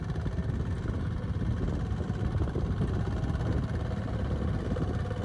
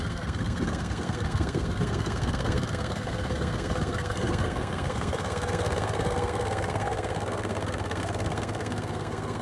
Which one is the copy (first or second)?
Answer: second